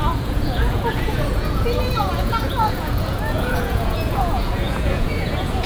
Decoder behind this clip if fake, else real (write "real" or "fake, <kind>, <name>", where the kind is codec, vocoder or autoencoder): fake, vocoder, Vocos